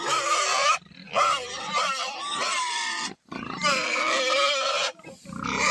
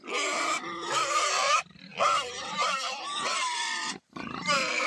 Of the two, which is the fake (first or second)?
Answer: second